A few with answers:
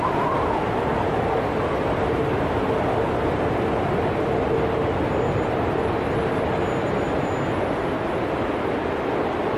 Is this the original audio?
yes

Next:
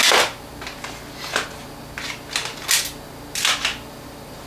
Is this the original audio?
yes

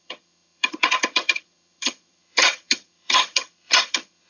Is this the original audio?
no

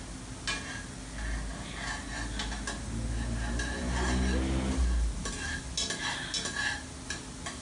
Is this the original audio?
yes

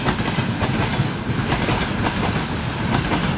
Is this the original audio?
yes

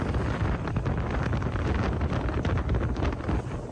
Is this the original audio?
yes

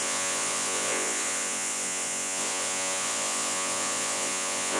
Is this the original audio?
no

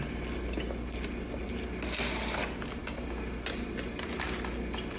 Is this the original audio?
yes